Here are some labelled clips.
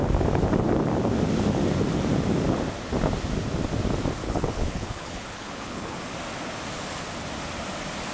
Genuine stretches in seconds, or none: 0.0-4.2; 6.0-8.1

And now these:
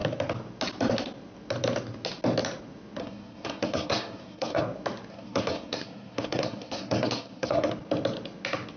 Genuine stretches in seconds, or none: 0.0-3.0; 4.6-5.1; 7.7-8.8

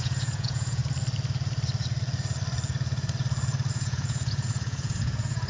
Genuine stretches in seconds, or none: 0.8-3.7

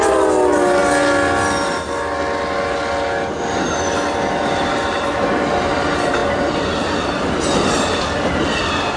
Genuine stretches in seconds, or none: 0.0-9.0

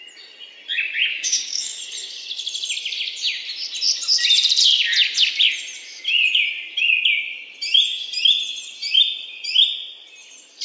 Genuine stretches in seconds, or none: 0.0-1.1; 1.8-10.6

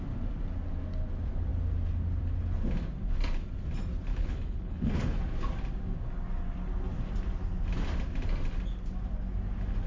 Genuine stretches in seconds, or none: 0.0-4.1; 5.2-9.9

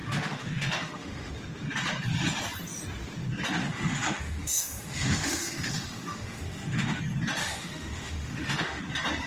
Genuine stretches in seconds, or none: 1.3-3.6; 7.0-7.4; 8.8-9.3

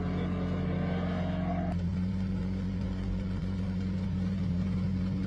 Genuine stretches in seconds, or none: 0.0-1.9